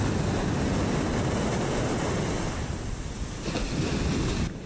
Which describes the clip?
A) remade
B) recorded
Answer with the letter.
B